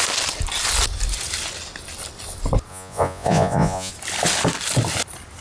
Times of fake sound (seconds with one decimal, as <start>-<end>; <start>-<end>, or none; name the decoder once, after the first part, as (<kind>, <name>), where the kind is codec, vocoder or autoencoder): 2.7-3.9 (vocoder, Vocos)